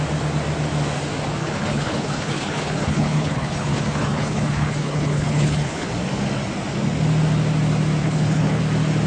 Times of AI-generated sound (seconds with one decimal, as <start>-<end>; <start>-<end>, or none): 1.4-5.9; 8.0-8.6